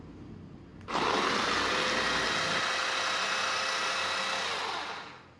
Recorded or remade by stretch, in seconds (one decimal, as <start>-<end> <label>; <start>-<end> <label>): 0.0-5.4 recorded